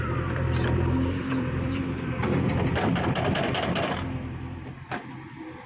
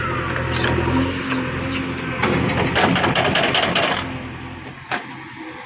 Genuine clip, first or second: second